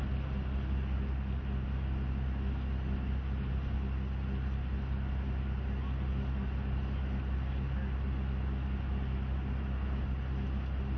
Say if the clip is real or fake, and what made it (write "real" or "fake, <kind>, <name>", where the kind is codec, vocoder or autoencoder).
real